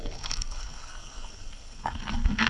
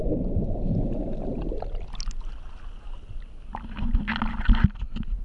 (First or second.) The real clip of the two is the second